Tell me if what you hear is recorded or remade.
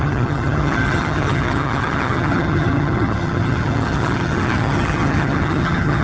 remade